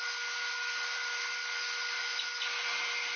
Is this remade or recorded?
recorded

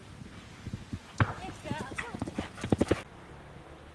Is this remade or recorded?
recorded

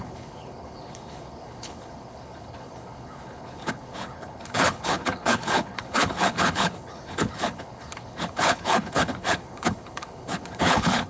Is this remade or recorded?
remade